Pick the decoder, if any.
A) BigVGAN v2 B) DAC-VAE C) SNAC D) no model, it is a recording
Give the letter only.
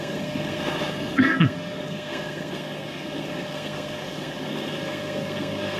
C